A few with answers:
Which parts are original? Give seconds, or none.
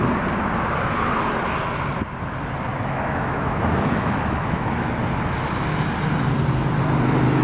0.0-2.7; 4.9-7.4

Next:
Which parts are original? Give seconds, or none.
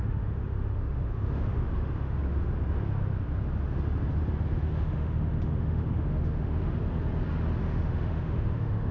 2.2-4.7; 6.8-7.6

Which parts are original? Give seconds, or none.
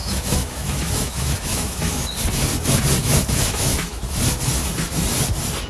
2.0-3.0; 4.0-5.7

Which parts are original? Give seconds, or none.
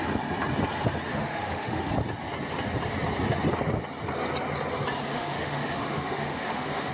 0.0-1.1; 1.9-5.1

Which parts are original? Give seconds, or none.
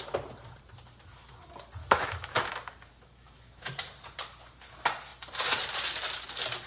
0.0-1.8; 2.5-2.9; 3.7-6.7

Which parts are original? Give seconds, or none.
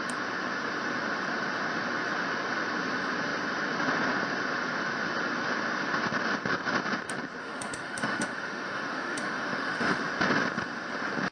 0.0-7.4; 10.0-11.3